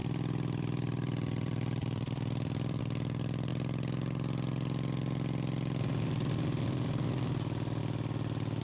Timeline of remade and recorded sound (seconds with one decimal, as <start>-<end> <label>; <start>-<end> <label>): 0.0-2.8 remade; 2.8-8.6 recorded